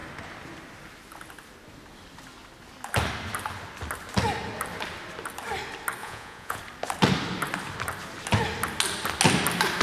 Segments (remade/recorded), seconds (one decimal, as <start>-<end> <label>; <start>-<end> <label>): 0.0-6.0 recorded; 6.0-6.6 remade; 6.6-9.8 recorded